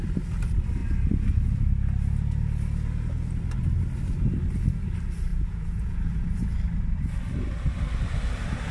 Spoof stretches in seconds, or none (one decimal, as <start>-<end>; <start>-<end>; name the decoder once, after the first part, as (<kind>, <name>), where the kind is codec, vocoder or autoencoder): 5.3-6.1 (vocoder, Vocos)